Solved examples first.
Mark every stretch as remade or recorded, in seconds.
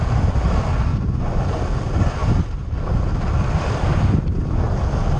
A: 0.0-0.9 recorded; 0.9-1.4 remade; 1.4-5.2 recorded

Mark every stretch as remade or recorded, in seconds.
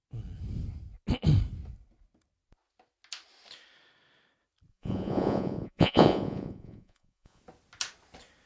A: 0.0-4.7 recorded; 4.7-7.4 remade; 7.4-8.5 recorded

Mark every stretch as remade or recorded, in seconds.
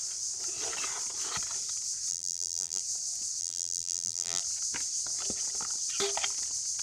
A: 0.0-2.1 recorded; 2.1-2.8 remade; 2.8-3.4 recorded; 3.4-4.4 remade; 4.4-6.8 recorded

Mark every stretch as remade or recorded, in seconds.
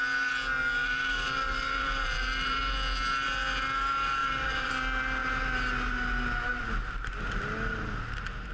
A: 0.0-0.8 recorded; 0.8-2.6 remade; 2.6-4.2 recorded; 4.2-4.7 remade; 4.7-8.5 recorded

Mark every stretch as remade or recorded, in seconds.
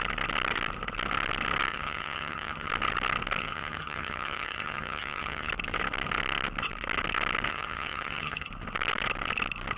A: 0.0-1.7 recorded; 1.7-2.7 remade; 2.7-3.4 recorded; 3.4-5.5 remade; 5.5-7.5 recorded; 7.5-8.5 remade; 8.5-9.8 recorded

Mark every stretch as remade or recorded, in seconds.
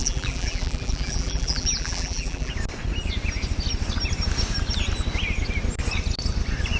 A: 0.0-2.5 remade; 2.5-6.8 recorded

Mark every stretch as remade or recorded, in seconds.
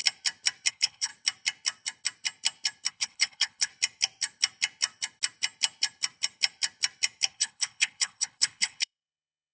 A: 0.0-0.7 recorded; 0.7-1.1 remade; 1.1-2.9 recorded; 2.9-3.7 remade; 3.7-7.3 recorded; 7.3-9.5 remade